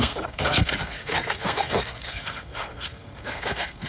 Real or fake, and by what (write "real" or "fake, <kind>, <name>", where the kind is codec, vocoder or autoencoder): fake, codec, SNAC